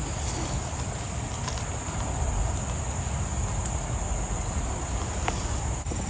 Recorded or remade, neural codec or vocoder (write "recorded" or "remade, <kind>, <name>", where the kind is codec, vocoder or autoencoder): recorded